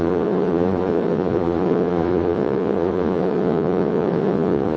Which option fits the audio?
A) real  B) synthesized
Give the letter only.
B